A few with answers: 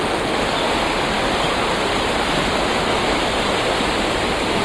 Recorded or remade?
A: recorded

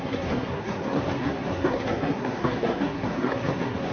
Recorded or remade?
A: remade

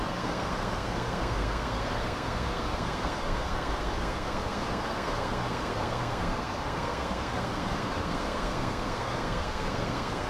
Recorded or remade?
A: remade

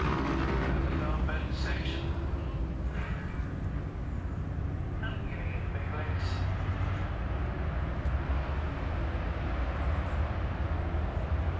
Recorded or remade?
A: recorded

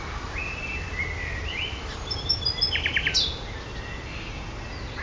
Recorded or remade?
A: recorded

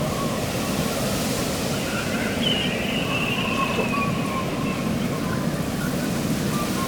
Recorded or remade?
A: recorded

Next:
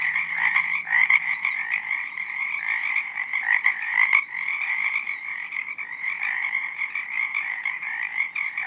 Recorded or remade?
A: remade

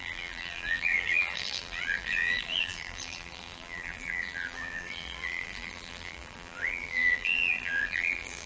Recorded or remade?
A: remade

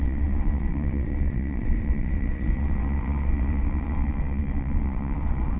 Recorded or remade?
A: remade